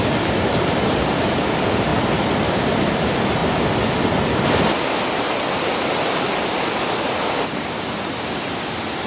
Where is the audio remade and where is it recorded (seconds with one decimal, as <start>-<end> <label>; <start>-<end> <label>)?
0.0-3.4 remade; 3.4-6.8 recorded; 6.8-9.1 remade